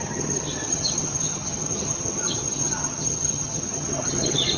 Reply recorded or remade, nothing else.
remade